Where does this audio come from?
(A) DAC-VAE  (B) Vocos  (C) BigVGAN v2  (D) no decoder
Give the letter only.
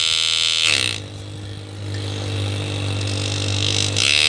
D